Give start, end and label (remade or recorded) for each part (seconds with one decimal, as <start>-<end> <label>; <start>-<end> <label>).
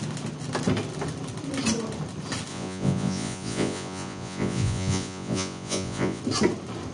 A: 0.0-2.5 recorded; 2.5-6.2 remade; 6.2-6.9 recorded